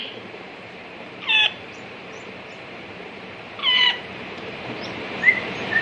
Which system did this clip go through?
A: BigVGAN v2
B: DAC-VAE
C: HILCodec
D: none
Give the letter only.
A